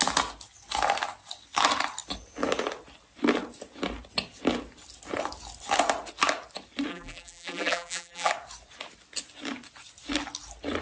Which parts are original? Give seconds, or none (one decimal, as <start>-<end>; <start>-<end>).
0.0-6.9; 8.3-10.8

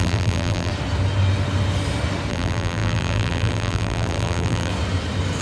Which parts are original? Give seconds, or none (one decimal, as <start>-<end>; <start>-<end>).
0.7-2.3; 4.7-5.4

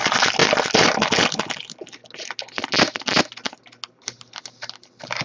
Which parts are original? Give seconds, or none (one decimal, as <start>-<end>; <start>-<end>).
0.0-5.2

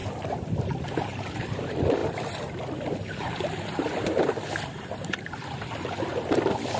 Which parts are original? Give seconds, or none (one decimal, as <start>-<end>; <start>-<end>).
none

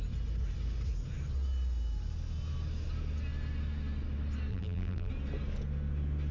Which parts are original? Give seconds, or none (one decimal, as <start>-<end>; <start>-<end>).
0.0-4.5; 5.1-6.3

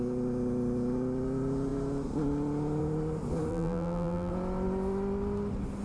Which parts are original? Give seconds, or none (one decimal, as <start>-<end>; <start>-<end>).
0.0-3.5; 4.3-5.8